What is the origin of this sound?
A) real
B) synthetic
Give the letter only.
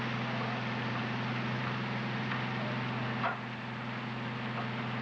A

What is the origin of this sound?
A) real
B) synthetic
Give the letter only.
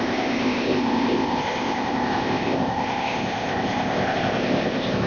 B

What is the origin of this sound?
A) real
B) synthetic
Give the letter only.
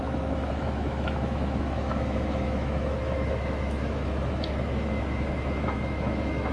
B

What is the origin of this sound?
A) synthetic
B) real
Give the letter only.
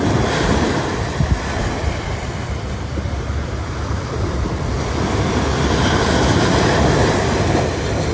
B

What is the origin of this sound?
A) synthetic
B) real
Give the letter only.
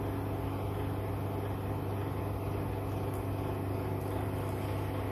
B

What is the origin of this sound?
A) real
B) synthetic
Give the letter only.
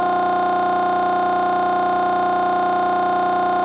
A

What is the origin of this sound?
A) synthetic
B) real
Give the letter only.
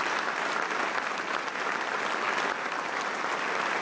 B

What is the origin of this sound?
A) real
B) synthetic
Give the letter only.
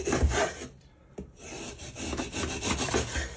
A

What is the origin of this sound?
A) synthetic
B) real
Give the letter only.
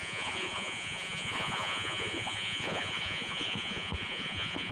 A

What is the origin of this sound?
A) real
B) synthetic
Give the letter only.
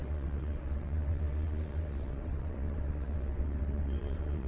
B